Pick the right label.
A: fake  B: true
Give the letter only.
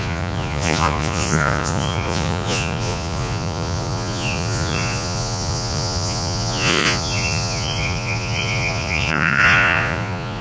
A